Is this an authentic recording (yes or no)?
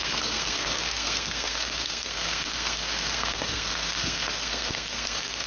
no